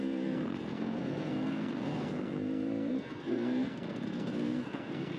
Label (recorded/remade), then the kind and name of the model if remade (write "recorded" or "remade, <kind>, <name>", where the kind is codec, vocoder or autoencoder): remade, codec, SNAC